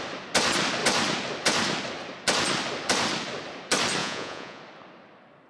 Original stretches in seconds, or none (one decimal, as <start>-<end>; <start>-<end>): 0.0-4.0; 4.6-5.5

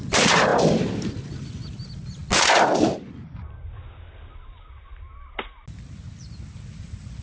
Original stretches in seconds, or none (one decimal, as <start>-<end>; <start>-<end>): 0.0-7.2

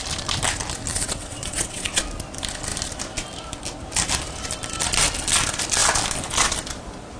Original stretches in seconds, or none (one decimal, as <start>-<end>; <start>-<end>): 0.0-0.9; 2.0-7.2

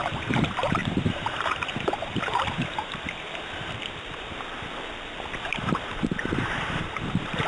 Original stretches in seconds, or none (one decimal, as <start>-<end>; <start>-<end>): 0.0-0.8; 3.1-5.5

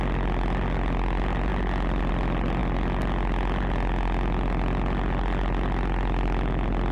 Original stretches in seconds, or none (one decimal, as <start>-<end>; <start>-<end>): 0.0-6.9